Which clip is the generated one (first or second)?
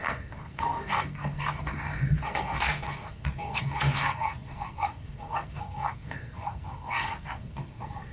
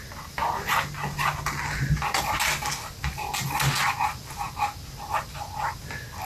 first